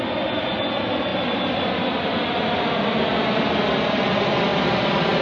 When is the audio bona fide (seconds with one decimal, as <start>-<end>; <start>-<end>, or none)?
0.0-5.2